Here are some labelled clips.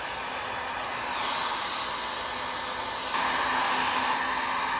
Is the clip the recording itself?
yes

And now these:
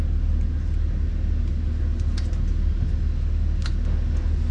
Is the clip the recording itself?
yes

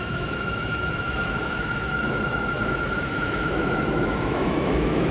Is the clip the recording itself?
no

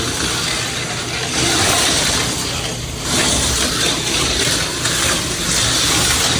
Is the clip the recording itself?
yes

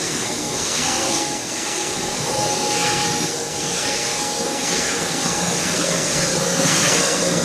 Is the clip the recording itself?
no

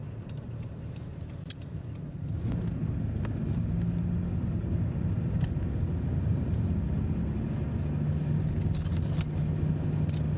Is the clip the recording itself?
yes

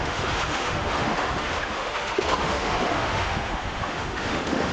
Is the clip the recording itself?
no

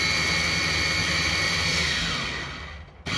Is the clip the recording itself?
yes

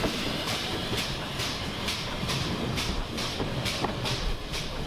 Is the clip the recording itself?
no